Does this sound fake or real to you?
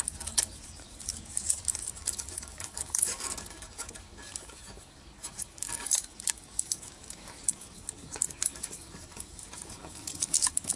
fake